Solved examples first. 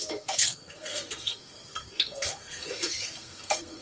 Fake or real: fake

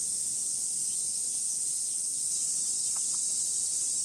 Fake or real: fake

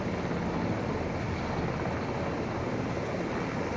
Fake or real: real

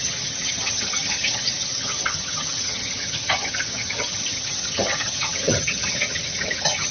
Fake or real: fake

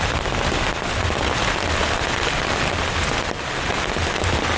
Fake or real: real